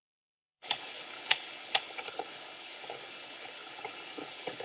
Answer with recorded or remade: remade